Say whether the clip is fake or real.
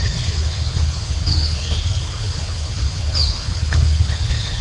fake